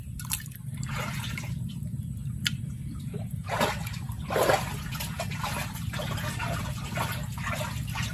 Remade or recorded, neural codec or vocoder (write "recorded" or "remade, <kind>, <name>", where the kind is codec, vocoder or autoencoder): recorded